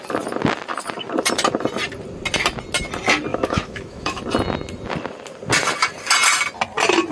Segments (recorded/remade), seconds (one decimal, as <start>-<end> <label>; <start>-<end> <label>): 0.0-3.3 recorded; 3.3-4.2 remade; 4.2-7.1 recorded